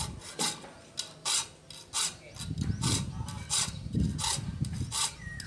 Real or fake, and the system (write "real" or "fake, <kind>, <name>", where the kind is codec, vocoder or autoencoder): real